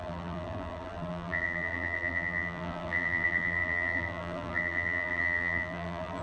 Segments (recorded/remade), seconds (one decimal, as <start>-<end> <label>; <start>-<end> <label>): 0.0-6.2 remade